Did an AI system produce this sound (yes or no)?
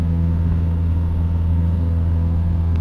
yes